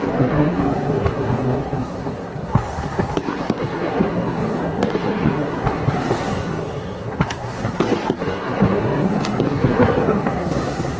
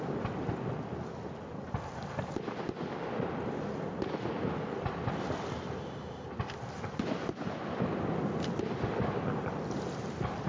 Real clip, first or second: second